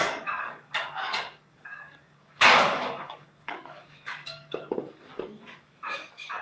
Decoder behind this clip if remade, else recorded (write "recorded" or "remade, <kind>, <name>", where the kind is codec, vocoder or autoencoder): remade, codec, DAC